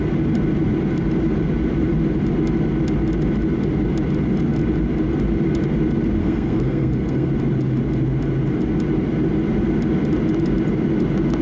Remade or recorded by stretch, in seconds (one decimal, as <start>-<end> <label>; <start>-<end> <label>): 0.0-6.2 recorded; 6.2-7.3 remade; 7.3-11.4 recorded

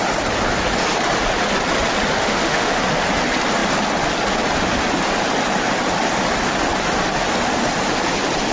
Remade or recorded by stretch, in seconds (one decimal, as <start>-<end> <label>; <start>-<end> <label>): 0.0-2.2 recorded; 2.2-2.8 remade; 2.8-8.5 recorded

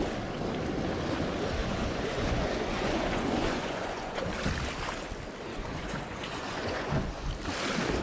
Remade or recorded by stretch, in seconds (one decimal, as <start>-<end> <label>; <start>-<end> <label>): 0.0-1.6 recorded; 1.6-4.3 remade; 4.3-5.5 recorded; 5.5-7.3 remade; 7.3-8.0 recorded

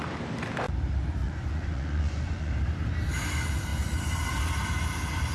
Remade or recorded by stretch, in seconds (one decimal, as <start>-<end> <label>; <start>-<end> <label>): 0.0-1.2 recorded; 1.2-2.5 remade; 2.5-5.3 recorded

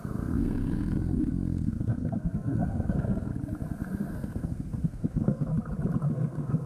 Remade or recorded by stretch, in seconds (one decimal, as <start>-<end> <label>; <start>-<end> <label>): 0.0-3.3 remade; 3.3-4.1 recorded; 4.1-5.5 remade; 5.5-6.1 recorded; 6.1-6.7 remade

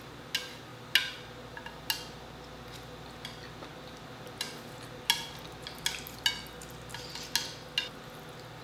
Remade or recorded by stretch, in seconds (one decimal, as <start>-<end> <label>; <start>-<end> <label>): 0.0-8.6 recorded

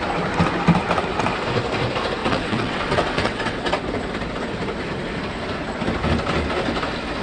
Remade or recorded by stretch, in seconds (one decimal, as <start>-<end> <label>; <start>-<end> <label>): 0.0-2.2 recorded; 2.2-3.8 remade; 3.8-7.2 recorded

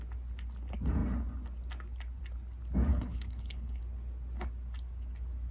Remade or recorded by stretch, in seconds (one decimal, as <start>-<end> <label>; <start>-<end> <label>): 0.0-2.9 recorded; 2.9-3.8 remade; 3.8-5.5 recorded